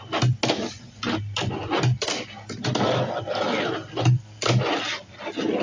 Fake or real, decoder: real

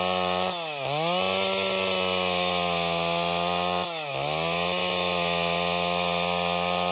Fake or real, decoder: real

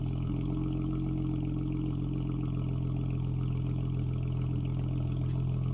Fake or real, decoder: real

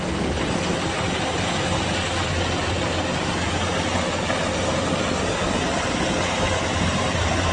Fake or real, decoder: real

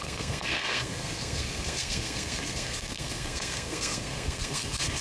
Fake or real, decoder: fake, codec, SNAC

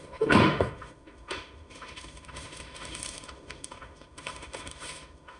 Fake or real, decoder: fake, autoencoder, DAC-VAE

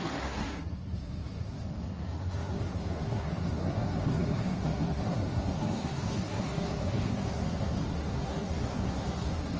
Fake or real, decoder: fake, codec, SNAC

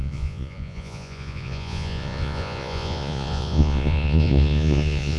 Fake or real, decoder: fake, vocoder, Vocos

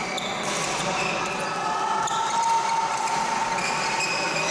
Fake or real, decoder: real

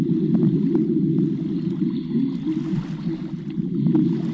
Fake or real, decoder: real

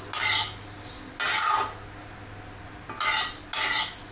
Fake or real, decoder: real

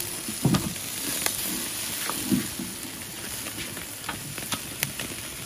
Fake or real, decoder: real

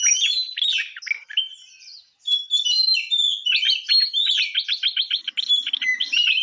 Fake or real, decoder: real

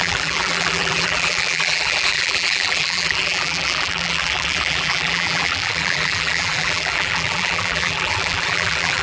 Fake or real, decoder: fake, vocoder, BigVGAN v2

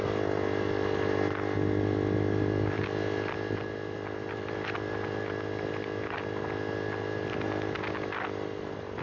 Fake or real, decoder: real